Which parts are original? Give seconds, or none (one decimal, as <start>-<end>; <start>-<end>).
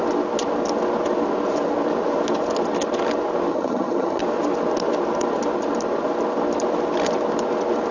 0.0-3.5; 4.2-7.9